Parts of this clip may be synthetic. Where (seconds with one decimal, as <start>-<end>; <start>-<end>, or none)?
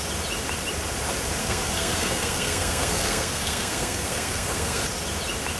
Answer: 1.4-4.8